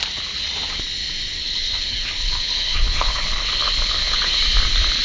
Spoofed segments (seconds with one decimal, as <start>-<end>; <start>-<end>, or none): 1.4-4.4